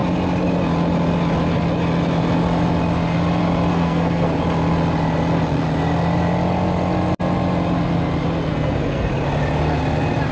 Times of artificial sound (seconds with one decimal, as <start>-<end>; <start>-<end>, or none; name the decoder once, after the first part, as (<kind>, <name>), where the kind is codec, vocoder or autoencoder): 3.7-4.3 (codec, SNAC); 8.5-9.1